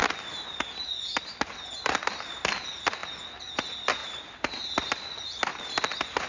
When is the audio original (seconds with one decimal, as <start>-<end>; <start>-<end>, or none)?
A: 0.0-4.0; 5.6-6.3